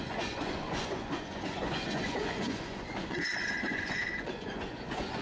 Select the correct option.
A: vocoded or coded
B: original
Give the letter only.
A